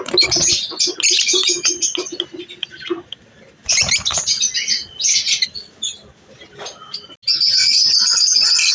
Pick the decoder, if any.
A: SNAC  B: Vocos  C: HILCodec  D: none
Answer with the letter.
D